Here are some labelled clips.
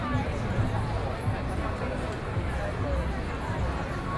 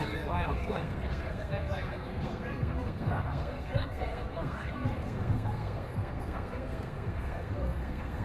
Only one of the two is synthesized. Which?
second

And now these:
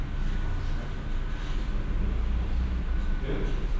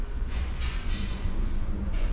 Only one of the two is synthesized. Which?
second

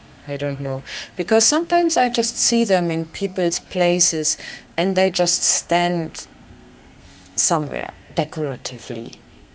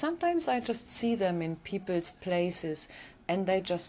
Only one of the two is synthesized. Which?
first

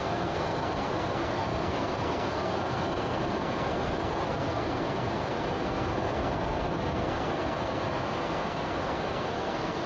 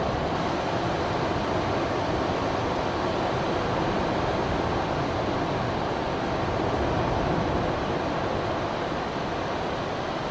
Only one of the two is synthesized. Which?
first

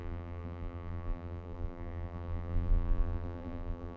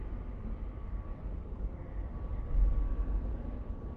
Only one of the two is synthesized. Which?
first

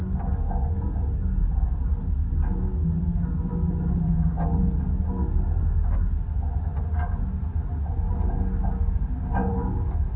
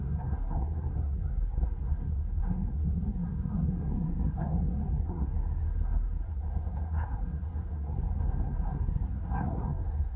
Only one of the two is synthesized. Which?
second